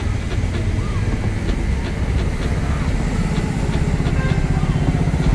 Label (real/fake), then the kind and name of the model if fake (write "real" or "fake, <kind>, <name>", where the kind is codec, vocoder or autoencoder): real